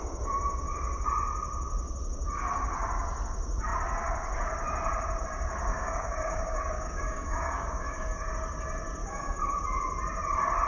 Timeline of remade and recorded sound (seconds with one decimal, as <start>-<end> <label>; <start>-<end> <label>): 0.0-5.7 recorded; 5.7-8.3 remade; 8.3-9.0 recorded; 9.0-9.6 remade; 9.6-10.7 recorded